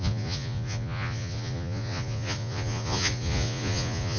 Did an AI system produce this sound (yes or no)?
yes